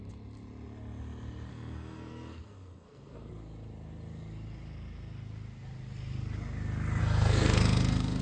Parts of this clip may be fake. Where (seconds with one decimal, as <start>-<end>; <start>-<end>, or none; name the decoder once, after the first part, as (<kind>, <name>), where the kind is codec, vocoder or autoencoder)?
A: 1.5-3.3 (codec, SNAC); 7.0-8.2